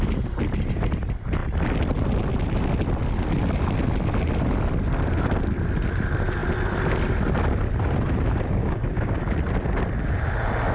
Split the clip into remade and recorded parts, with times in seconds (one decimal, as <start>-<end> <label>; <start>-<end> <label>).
0.0-8.6 recorded; 8.6-9.2 remade; 9.2-10.7 recorded